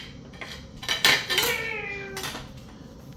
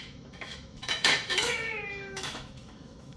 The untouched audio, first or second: first